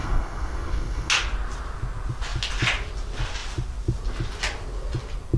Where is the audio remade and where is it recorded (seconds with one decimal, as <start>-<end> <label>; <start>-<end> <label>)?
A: 0.0-1.1 remade; 1.1-5.4 recorded